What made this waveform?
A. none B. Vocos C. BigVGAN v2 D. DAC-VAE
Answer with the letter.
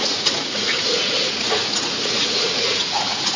B